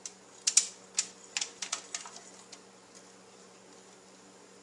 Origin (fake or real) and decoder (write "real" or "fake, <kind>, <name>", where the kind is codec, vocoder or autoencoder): real